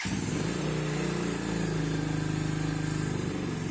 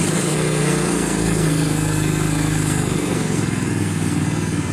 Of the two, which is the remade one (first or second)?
second